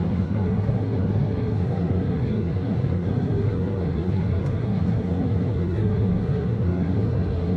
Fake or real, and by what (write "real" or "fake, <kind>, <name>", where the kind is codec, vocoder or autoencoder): fake, codec, SNAC